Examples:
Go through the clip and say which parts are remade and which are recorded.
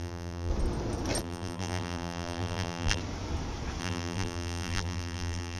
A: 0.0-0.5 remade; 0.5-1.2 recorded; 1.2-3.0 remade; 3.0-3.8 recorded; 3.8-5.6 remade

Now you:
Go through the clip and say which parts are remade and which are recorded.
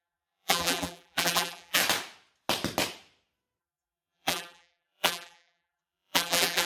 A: 0.0-1.8 remade; 1.8-3.6 recorded; 3.6-6.7 remade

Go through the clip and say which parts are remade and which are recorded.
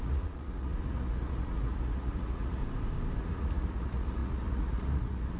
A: 0.0-2.6 remade; 2.6-3.2 recorded; 3.2-5.4 remade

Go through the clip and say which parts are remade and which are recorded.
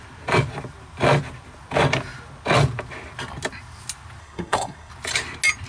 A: 0.0-4.2 recorded; 4.2-4.9 remade; 4.9-5.7 recorded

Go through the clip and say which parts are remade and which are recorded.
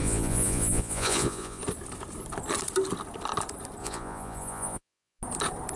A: 0.0-1.6 remade; 1.6-3.8 recorded; 3.8-5.2 remade; 5.2-5.8 recorded